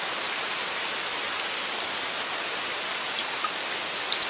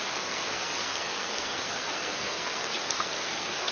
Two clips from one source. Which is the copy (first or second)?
second